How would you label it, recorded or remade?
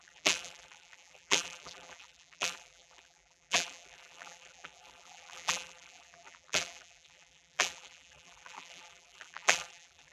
remade